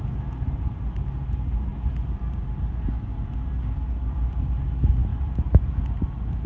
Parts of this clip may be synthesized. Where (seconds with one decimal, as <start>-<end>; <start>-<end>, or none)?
none